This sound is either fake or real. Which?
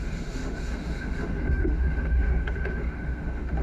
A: fake